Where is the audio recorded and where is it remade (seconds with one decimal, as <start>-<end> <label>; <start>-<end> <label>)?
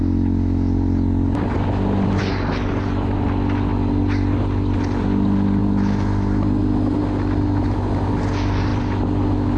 0.0-9.6 recorded